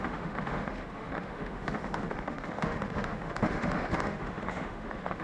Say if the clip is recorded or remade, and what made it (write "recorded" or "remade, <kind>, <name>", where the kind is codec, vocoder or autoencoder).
remade, autoencoder, DAC-VAE